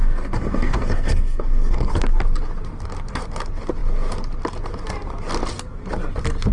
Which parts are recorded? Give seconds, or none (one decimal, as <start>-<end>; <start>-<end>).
1.9-6.5